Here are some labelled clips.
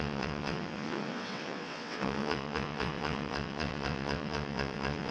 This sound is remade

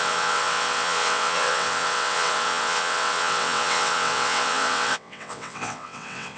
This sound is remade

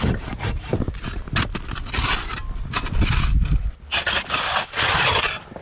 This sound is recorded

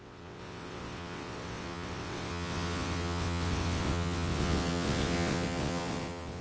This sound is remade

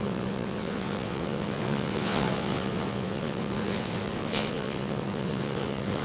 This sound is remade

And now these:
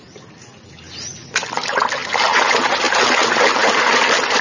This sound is recorded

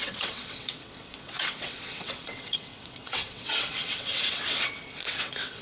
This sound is remade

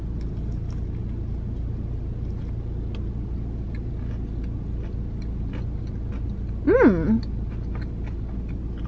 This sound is recorded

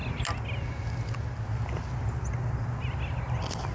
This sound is recorded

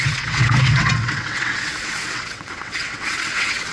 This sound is remade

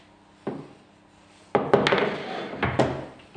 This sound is recorded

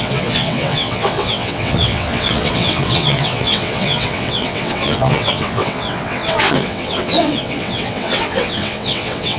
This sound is remade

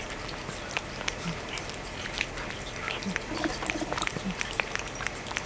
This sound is recorded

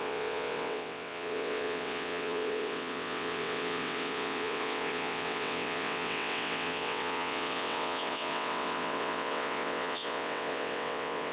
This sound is remade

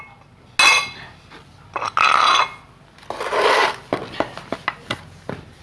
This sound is recorded